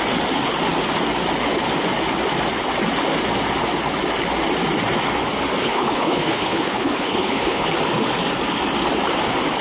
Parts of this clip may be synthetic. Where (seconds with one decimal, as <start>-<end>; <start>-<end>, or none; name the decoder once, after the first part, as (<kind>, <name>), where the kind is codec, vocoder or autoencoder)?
5.6-7.7 (codec, HILCodec)